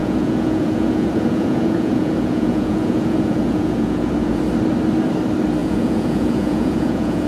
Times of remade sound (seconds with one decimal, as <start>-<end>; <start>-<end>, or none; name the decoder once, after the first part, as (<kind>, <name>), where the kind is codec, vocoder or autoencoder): 0.0-4.4 (vocoder, Vocos); 5.6-7.3